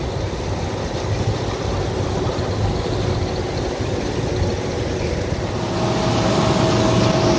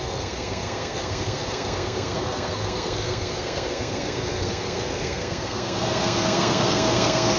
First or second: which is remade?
second